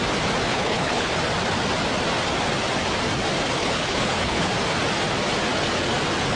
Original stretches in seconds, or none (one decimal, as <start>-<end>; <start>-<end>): 0.0-0.5; 1.1-3.6; 4.5-6.4